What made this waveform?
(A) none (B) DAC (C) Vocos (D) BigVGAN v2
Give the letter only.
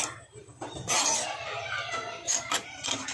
A